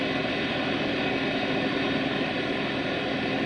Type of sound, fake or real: real